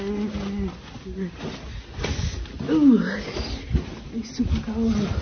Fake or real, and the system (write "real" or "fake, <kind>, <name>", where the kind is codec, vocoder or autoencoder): real